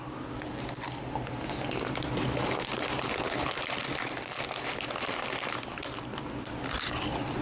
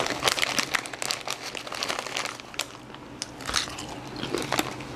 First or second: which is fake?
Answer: first